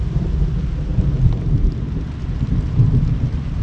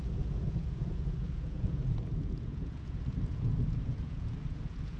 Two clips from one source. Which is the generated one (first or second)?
second